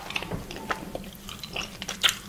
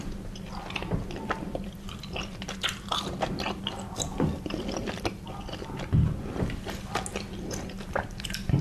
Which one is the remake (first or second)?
first